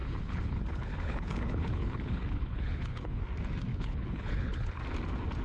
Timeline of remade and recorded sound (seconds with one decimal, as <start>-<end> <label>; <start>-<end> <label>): 0.0-3.2 remade; 3.2-3.7 recorded; 3.7-4.8 remade; 4.8-5.4 recorded